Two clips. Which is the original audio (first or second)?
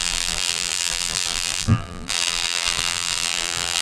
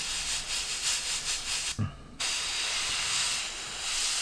second